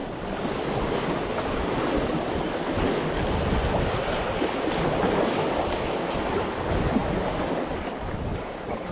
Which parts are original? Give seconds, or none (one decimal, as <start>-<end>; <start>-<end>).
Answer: 0.0-8.9